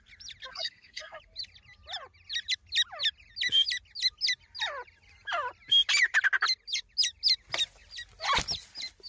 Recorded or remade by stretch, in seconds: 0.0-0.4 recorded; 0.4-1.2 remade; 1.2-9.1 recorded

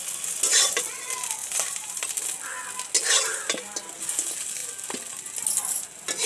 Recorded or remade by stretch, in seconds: 0.0-1.4 recorded; 1.4-2.1 remade; 2.1-6.3 recorded

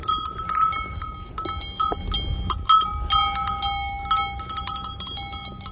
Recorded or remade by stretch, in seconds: 0.0-5.7 recorded

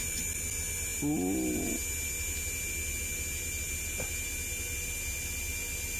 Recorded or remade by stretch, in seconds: 0.0-6.0 recorded

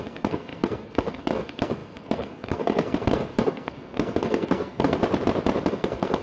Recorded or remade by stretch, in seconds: 0.0-5.0 remade; 5.0-5.7 recorded; 5.7-6.2 remade

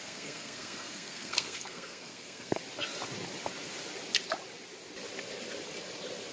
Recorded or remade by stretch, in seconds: 0.0-2.6 remade; 2.6-6.3 recorded

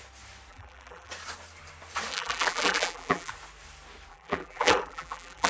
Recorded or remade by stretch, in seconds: 0.0-0.5 recorded; 0.5-1.1 remade; 1.1-2.1 recorded; 2.1-3.3 remade; 3.3-4.1 recorded; 4.1-5.5 remade